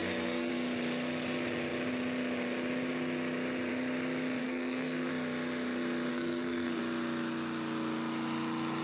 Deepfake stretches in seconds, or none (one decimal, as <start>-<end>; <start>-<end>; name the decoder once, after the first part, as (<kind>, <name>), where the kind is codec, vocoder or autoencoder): 0.0-0.5 (codec, SNAC); 4.4-5.1; 6.1-6.8